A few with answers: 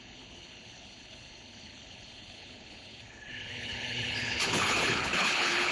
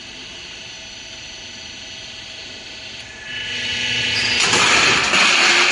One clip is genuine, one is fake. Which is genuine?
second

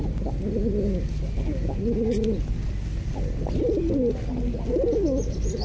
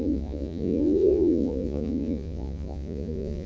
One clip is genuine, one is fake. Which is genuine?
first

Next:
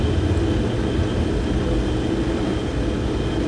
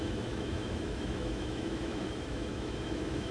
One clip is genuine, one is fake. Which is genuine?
first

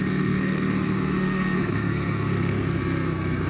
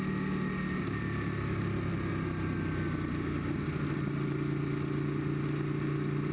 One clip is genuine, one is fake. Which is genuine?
second